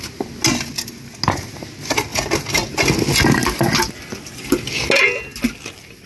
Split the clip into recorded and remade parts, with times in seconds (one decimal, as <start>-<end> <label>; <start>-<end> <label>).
0.0-6.1 recorded